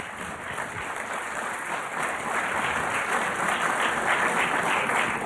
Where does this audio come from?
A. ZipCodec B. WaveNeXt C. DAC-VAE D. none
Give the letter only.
D